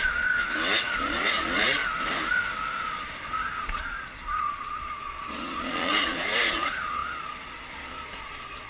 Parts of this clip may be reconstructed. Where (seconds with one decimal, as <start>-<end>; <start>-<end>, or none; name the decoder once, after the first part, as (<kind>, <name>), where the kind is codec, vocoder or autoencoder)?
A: 0.0-0.4 (vocoder, Vocos); 1.0-1.8; 2.8-8.7